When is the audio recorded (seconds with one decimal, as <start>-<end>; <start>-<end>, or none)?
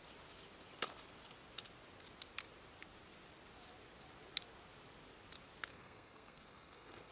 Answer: 0.0-5.7